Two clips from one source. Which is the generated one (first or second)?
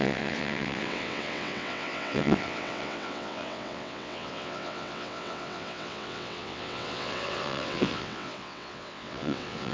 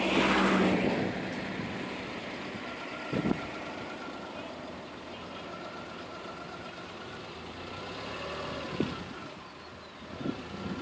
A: first